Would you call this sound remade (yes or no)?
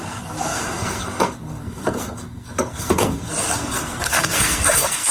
yes